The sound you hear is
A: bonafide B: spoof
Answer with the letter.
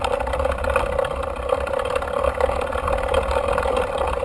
A